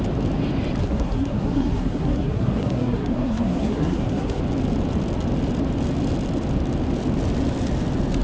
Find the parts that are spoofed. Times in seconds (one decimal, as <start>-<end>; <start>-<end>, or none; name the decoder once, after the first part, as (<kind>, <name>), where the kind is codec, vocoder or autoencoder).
0.8-4.4 (codec, SNAC)